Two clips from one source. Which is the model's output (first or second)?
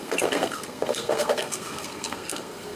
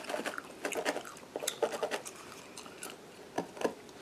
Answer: first